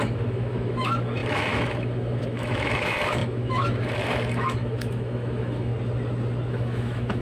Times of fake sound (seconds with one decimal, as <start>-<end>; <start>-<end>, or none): 0.0-5.7; 6.5-7.2